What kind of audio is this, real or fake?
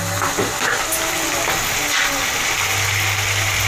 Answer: real